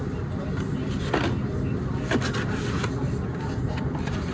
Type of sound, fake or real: real